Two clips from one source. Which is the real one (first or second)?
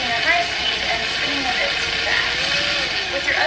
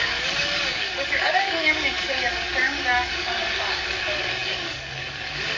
first